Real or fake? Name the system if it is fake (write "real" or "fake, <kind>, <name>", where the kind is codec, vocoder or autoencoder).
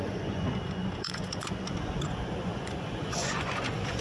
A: fake, vocoder, Vocos